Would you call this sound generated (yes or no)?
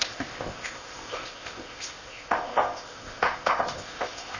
yes